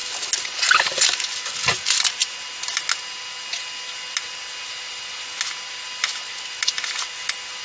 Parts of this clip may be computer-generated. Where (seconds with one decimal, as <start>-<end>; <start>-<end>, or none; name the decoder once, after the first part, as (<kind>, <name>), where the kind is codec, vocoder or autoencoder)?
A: none